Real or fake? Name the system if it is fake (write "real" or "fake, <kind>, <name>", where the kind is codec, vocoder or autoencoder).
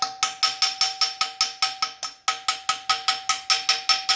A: real